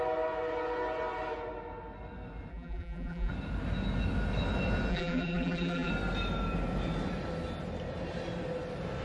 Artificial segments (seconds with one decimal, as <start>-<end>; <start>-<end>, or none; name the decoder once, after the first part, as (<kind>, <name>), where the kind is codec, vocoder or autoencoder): 2.5-3.3 (vocoder, BigVGAN v2); 4.9-5.9

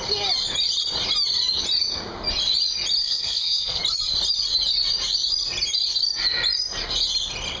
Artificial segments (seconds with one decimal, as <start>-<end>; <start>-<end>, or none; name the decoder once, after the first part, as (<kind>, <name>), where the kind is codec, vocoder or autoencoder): 3.0-3.8 (codec, SNAC)

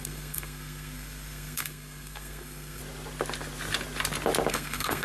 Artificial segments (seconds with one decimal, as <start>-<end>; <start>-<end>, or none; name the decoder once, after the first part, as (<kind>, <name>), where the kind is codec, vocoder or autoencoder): 0.0-2.8 (codec, SNAC); 4.5-5.0

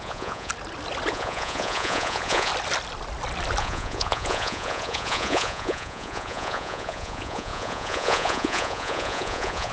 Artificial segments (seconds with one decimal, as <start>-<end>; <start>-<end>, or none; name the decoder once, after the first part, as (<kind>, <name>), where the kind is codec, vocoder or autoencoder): 0.0-0.5 (vocoder, Vocos); 1.1-2.5; 3.6-9.7

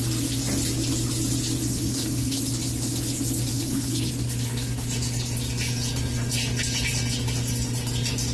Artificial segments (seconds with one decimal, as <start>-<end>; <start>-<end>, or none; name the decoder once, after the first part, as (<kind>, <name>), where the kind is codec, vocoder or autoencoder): 1.7-2.4 (codec, HILCodec); 3.5-4.1